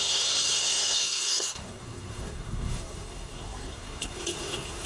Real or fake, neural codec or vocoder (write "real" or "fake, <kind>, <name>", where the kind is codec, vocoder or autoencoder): fake, codec, SNAC